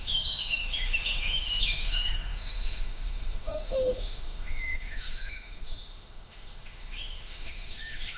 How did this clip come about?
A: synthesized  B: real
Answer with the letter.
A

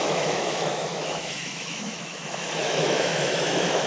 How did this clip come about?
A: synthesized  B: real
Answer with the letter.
A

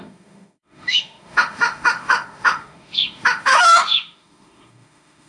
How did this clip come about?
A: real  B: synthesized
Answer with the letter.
B